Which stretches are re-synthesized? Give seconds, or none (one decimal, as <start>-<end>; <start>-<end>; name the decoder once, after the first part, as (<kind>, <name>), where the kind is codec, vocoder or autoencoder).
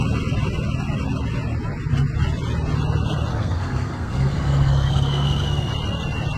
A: 3.3-5.7 (codec, SNAC)